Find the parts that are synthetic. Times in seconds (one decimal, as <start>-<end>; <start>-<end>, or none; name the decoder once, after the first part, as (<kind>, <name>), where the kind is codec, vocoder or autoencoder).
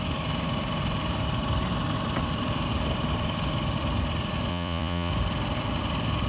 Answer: 4.5-5.1 (vocoder, Vocos)